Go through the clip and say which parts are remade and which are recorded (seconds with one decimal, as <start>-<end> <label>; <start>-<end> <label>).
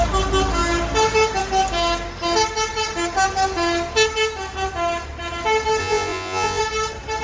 0.0-5.8 recorded; 5.8-6.6 remade; 6.6-7.2 recorded